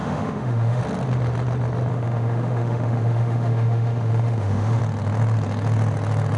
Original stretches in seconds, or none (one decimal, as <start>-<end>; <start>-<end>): 0.8-1.9; 4.8-6.4